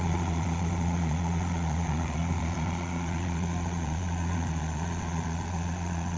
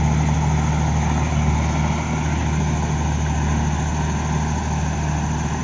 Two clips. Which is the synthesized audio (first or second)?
first